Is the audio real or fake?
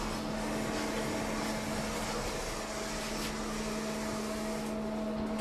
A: real